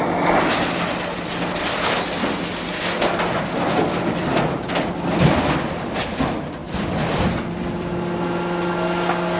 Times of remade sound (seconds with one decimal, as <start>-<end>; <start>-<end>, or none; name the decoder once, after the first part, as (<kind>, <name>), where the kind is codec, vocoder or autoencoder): 6.6-7.9 (vocoder, BigVGAN v2)